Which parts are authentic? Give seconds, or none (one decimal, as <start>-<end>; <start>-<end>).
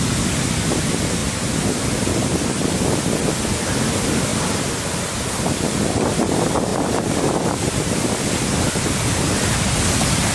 0.0-1.2; 2.7-6.7; 7.7-10.3